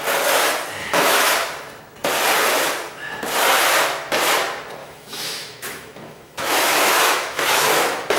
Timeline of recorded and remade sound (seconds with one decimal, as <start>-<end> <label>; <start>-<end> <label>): 0.0-0.8 recorded; 0.8-1.3 remade; 1.3-4.8 recorded; 4.8-8.2 remade